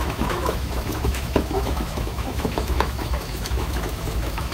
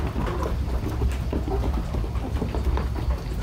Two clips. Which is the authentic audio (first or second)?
second